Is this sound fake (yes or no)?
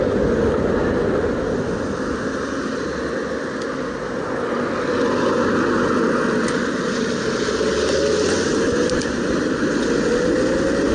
no